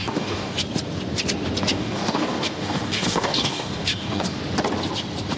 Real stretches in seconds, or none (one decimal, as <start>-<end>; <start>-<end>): 0.6-1.7; 4.4-5.4